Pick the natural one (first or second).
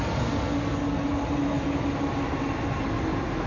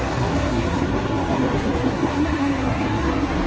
first